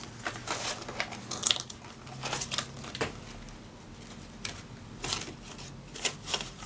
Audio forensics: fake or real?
real